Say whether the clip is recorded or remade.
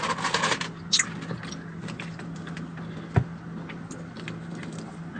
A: recorded